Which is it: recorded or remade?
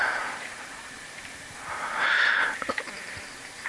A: remade